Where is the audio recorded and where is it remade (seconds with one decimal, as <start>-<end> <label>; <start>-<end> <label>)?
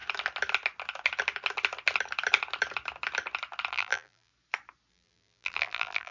0.0-3.7 recorded; 3.7-4.3 remade; 4.3-4.9 recorded; 4.9-6.1 remade